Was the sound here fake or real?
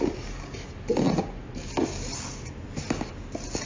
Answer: real